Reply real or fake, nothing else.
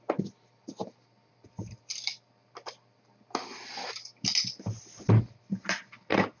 real